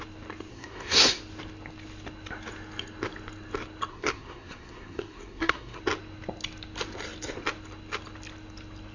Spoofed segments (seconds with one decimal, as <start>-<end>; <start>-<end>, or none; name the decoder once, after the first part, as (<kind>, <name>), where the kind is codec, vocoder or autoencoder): 0.5-1.2 (codec, SNAC); 3.9-5.8